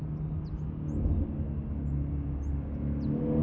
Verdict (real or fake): real